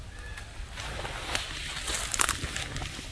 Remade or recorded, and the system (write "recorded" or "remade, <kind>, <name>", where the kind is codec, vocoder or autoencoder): recorded